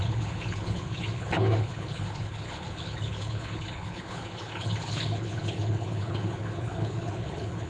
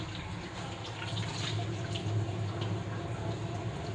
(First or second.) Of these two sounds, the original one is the second